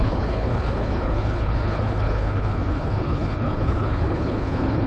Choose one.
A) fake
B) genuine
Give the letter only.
A